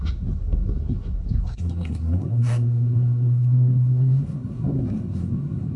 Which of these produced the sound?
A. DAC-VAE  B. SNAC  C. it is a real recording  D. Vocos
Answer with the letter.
B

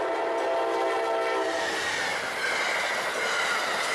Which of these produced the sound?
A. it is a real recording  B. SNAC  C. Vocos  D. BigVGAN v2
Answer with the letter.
A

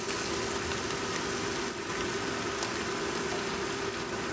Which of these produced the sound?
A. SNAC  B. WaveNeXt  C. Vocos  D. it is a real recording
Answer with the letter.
D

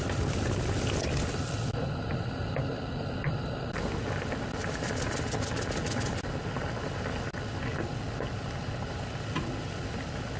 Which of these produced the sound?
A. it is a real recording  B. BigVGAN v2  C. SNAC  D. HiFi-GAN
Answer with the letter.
A